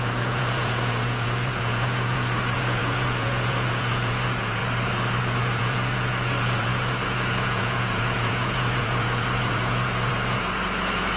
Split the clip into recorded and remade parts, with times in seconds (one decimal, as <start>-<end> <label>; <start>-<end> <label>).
0.0-4.6 remade; 4.6-5.2 recorded; 5.2-11.2 remade